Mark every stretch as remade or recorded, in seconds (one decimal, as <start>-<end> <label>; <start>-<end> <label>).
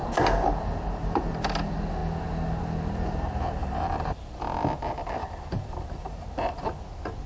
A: 0.0-3.6 recorded; 3.6-4.4 remade; 4.4-5.2 recorded; 5.2-6.8 remade; 6.8-7.3 recorded